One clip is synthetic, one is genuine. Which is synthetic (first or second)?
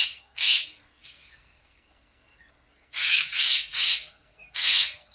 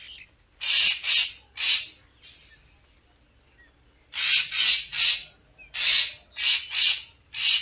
first